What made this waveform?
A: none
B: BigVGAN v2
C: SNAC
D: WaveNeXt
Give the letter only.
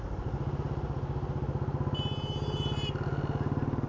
A